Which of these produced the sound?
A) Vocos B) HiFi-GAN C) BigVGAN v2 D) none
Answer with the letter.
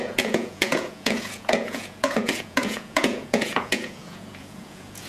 A